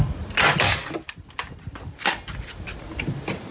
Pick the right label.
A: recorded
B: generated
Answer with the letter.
A